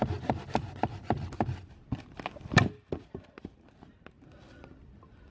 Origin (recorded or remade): recorded